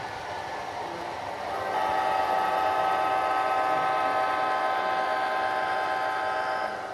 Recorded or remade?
recorded